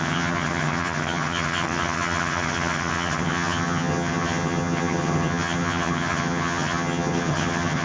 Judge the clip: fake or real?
fake